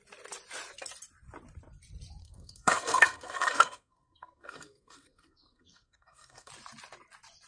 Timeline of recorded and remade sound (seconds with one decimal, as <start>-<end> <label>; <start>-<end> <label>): 0.0-2.2 recorded; 2.2-6.5 remade; 6.5-7.5 recorded